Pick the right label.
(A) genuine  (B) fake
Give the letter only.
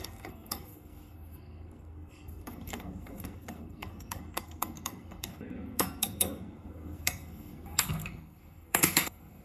B